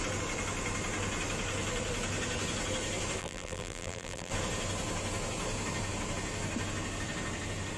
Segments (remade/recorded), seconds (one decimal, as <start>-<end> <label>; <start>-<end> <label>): 0.0-3.2 recorded; 3.2-4.3 remade; 4.3-7.8 recorded